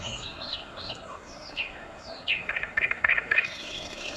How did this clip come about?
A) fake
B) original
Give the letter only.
A